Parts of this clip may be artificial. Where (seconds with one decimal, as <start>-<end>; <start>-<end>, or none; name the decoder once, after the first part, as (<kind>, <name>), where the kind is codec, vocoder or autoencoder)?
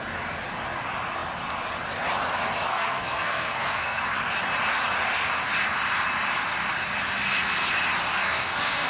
2.7-4.0 (codec, SNAC); 8.1-8.9